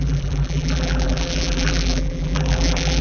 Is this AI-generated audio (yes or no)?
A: yes